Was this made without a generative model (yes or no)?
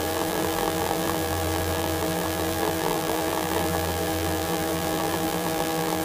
no